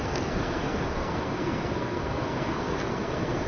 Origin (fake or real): fake